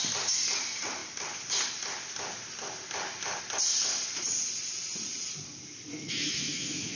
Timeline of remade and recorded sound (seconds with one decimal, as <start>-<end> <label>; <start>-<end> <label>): 0.0-5.9 recorded; 5.9-7.0 remade